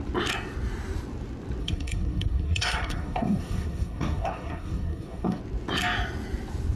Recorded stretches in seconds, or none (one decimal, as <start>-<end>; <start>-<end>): 0.0-1.6; 5.4-6.8